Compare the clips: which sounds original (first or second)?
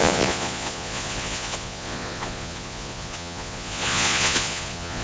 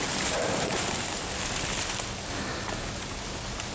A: second